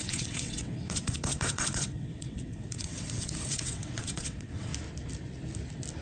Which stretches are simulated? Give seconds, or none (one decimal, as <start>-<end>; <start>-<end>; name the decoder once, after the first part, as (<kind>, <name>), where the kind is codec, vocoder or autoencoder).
0.0-4.7 (vocoder, WaveNeXt)